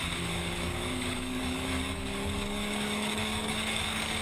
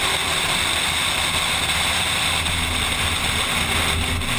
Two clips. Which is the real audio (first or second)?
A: second